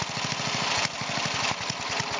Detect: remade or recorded recorded